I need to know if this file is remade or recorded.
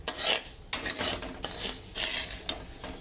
recorded